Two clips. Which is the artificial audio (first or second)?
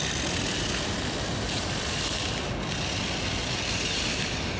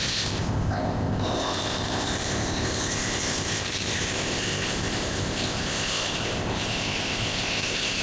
second